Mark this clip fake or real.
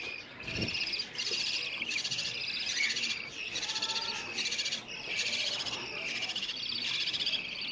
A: fake